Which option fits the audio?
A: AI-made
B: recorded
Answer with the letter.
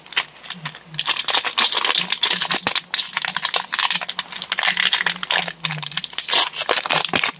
B